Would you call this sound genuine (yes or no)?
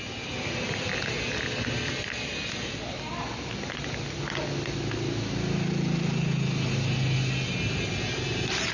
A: yes